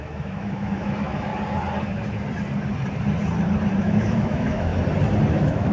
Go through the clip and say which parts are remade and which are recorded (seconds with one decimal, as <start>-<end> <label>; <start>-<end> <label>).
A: 0.0-1.3 remade; 1.3-3.8 recorded; 3.8-4.7 remade; 4.7-5.3 recorded; 5.3-5.7 remade